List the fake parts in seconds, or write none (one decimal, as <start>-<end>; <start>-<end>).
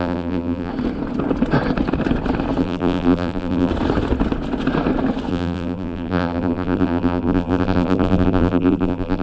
0.0-0.7; 2.6-3.7; 5.3-9.2